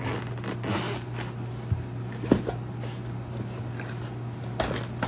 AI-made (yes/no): no